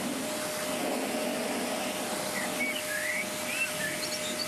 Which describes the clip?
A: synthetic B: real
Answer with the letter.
B